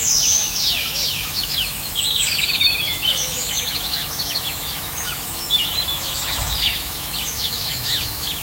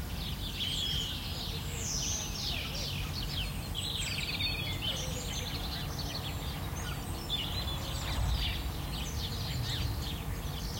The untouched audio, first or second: second